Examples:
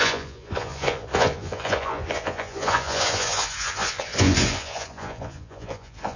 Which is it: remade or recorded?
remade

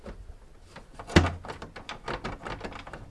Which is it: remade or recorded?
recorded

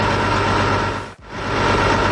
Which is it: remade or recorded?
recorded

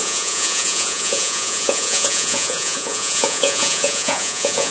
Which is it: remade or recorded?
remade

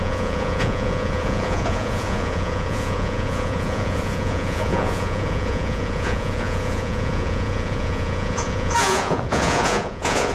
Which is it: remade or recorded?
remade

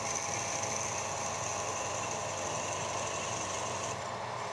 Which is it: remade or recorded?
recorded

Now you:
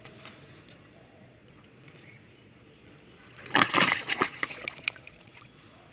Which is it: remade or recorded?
remade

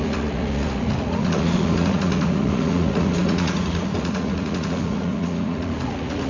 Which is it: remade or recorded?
remade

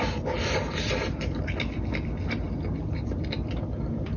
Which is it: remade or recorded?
recorded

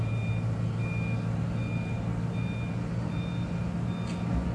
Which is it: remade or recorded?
recorded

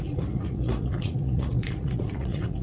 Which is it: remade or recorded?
remade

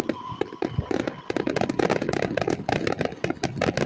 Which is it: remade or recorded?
recorded